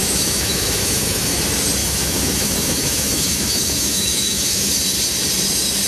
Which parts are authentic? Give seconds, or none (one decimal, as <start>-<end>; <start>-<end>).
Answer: 1.4-1.8; 4.7-5.9